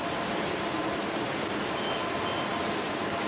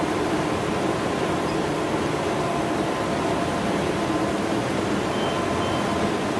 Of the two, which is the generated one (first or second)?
first